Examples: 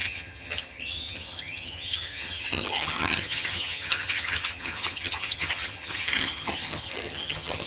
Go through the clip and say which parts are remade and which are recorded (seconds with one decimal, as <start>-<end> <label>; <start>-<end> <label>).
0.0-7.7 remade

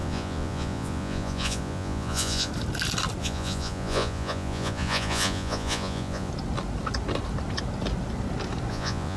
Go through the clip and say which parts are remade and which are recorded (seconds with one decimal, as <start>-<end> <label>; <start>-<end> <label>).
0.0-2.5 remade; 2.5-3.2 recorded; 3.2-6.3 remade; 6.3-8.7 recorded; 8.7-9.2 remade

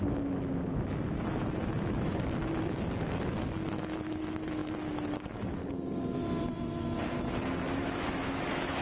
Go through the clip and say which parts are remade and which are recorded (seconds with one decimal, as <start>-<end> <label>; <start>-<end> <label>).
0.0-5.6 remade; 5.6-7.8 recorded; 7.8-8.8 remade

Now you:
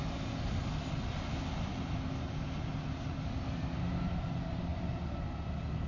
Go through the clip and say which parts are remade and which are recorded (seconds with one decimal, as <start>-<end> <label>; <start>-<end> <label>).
0.0-5.9 recorded